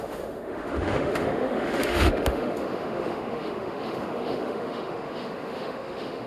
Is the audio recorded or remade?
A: remade